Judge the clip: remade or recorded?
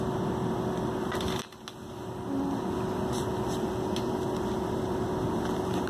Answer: recorded